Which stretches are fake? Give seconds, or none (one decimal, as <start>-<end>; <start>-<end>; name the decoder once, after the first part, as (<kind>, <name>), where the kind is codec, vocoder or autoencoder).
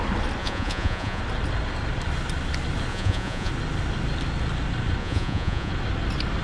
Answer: 0.4-1.2 (vocoder, Vocos); 2.9-3.5; 5.0-5.7